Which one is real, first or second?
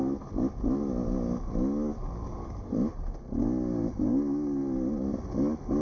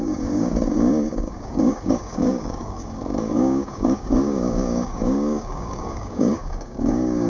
first